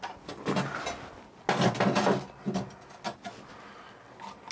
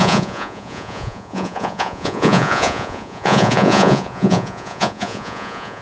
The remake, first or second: second